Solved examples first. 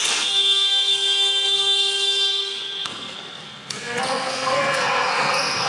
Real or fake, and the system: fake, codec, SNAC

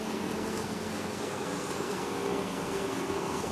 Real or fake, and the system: fake, codec, SNAC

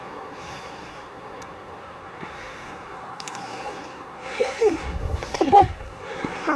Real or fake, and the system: fake, codec, SNAC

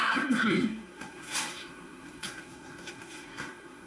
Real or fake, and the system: fake, codec, SNAC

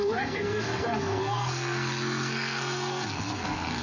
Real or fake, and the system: fake, codec, SNAC